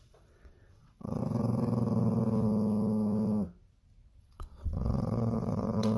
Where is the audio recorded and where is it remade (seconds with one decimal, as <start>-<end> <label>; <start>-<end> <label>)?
0.0-1.2 remade; 1.2-4.2 recorded; 4.2-6.0 remade